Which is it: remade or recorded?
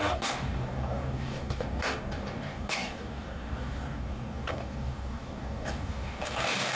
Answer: remade